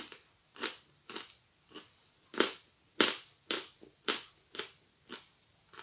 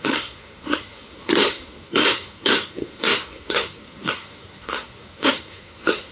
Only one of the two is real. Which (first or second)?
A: first